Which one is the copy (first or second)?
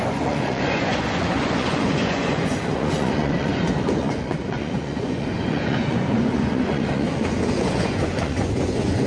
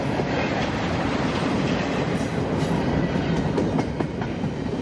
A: first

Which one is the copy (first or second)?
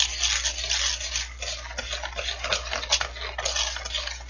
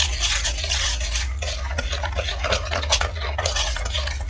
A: second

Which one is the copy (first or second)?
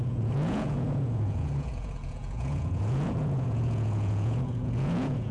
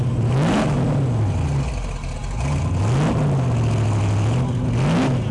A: first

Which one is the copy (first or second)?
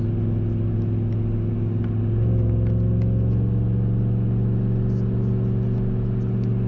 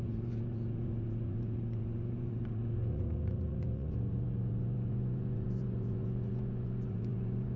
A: second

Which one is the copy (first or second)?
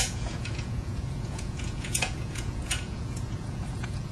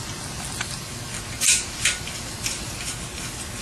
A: first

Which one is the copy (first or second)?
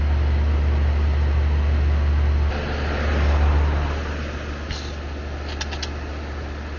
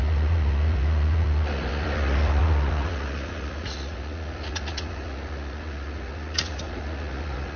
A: second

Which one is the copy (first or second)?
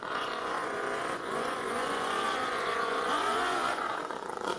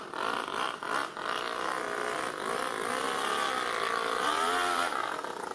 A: first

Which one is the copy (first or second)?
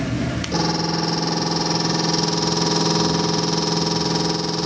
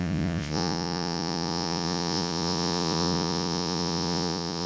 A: second